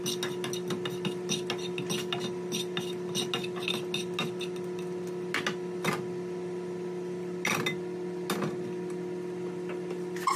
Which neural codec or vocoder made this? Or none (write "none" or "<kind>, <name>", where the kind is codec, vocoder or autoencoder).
none